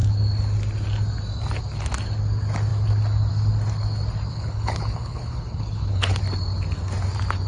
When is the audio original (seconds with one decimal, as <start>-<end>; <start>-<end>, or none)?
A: 0.0-4.3; 6.2-7.5